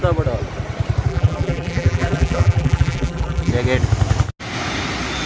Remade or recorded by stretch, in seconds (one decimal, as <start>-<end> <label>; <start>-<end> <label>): 0.0-1.1 recorded; 1.1-3.5 remade; 3.5-5.3 recorded

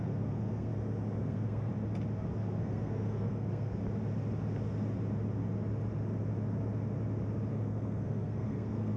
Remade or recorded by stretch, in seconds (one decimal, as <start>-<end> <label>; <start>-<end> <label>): 0.0-0.7 remade; 0.7-1.2 recorded; 1.2-1.7 remade; 1.7-2.3 recorded; 2.3-3.8 remade; 3.8-7.5 recorded; 7.5-9.0 remade

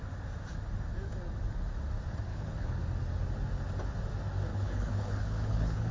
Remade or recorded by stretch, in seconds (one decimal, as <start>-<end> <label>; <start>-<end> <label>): 0.0-2.3 recorded; 2.3-2.8 remade; 2.8-4.5 recorded; 4.5-5.9 remade

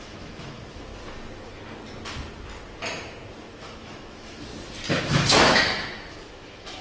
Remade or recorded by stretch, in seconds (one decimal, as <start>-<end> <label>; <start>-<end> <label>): 0.0-0.9 remade; 0.9-3.5 recorded; 3.5-4.5 remade; 4.5-5.0 recorded; 5.0-6.8 remade

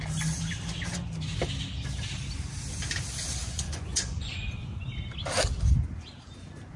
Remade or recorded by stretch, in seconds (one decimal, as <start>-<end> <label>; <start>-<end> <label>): 0.0-3.4 recorded; 3.4-4.3 remade; 4.3-6.8 recorded

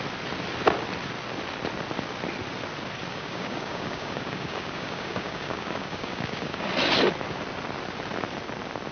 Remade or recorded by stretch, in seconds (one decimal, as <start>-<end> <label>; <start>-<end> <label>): 0.0-3.1 recorded; 3.1-6.7 remade; 6.7-8.9 recorded

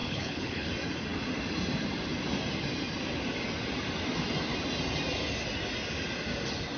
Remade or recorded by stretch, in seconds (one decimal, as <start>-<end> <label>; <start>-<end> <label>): 0.0-0.7 remade; 0.7-6.8 recorded